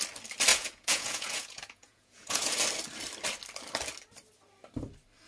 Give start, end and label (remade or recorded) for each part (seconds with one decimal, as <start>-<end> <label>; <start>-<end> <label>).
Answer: 0.0-0.5 recorded; 0.5-2.6 remade; 2.6-5.3 recorded